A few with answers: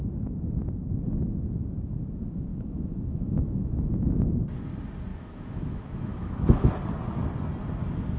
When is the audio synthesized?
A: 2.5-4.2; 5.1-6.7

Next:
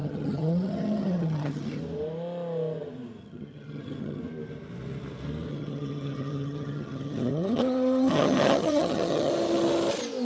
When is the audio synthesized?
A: 0.0-1.8; 3.2-4.2; 5.5-9.3

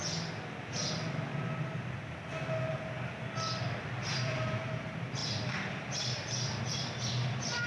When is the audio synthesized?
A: 4.1-7.7